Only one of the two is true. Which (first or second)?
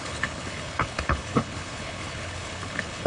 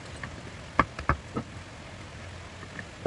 second